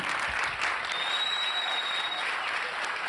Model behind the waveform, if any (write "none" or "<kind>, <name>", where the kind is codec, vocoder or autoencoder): none